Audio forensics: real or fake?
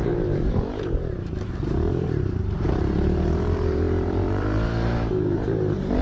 fake